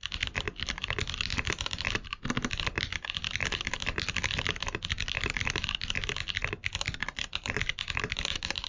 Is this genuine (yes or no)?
yes